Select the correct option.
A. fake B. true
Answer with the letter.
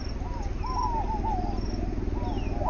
B